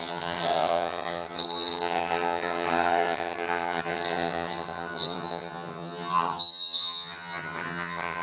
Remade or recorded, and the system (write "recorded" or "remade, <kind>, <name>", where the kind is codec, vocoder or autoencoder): remade, vocoder, HiFi-GAN